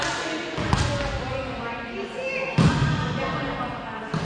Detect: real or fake real